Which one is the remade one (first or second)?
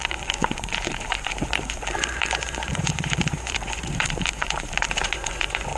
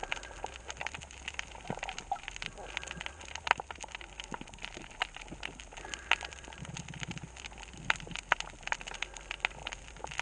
first